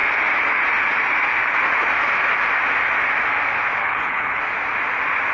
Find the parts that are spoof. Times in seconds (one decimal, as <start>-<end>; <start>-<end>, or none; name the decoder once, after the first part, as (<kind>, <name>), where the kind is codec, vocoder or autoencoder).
3.8-4.4 (codec, HILCodec)